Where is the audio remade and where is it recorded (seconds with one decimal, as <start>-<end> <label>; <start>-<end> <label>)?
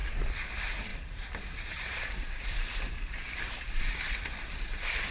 0.0-0.9 recorded; 0.9-4.0 remade; 4.0-5.1 recorded